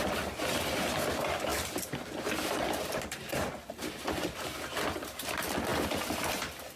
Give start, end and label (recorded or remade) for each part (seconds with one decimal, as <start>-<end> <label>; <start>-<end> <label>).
0.0-5.7 remade; 5.7-6.3 recorded; 6.3-6.8 remade